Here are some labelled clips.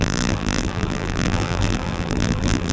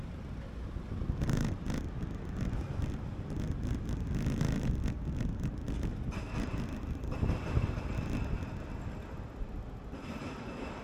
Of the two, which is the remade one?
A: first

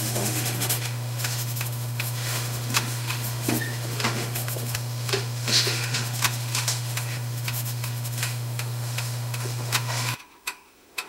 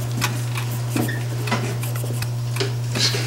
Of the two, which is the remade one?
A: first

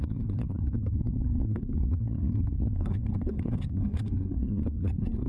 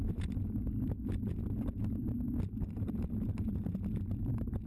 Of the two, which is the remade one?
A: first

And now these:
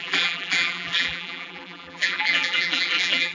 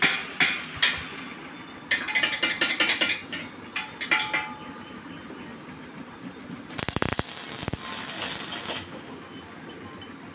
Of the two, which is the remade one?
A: first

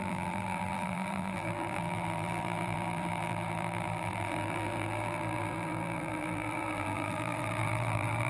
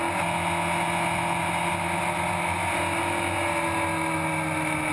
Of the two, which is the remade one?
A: first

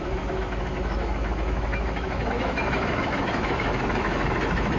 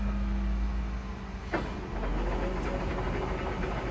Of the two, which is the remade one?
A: first